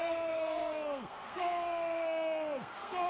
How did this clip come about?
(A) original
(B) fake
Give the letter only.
B